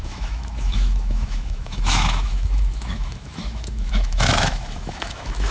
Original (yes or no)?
no